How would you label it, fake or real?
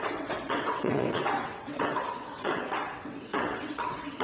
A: fake